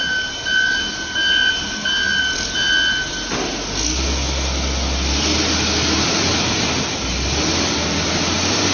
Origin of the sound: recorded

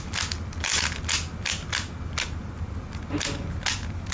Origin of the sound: recorded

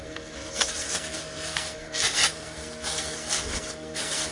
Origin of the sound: remade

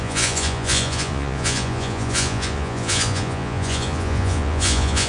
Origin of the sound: remade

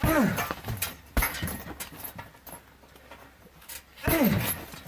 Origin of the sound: recorded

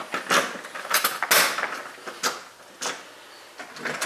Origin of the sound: recorded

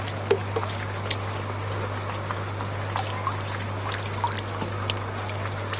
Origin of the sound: recorded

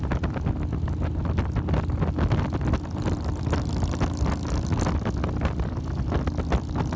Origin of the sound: recorded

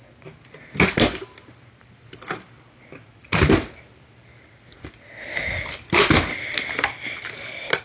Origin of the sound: recorded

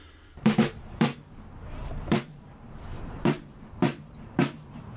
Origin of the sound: remade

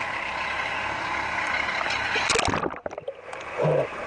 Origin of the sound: recorded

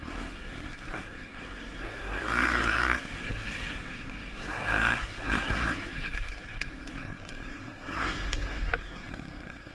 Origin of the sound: remade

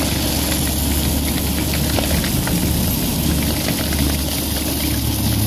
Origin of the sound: recorded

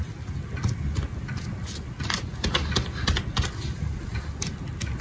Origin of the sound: recorded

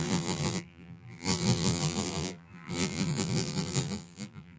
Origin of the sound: remade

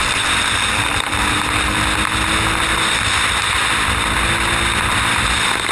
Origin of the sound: recorded